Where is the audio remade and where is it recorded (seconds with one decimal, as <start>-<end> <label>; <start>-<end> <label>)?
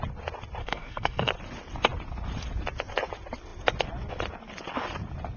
0.0-0.6 recorded; 0.6-1.3 remade; 1.3-5.4 recorded